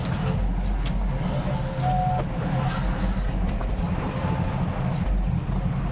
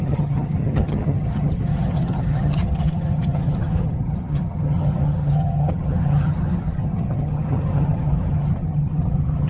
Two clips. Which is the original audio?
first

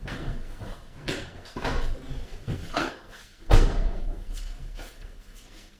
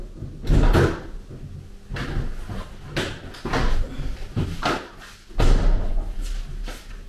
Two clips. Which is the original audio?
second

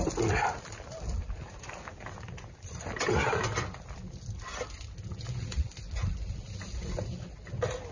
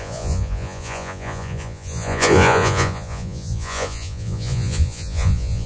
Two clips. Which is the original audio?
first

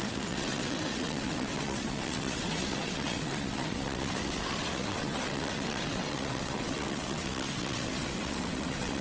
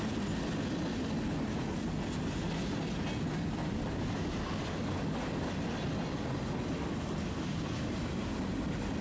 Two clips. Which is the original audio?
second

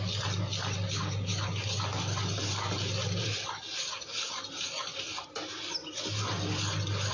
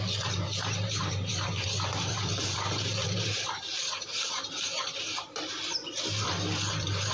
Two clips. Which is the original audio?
first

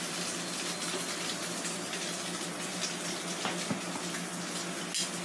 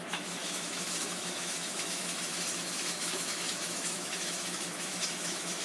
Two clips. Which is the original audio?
first